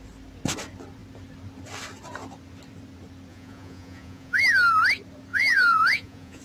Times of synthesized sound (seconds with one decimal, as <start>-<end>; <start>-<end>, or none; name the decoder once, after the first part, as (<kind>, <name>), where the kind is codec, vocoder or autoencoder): 3.3-4.4 (vocoder, Vocos); 5.3-6.4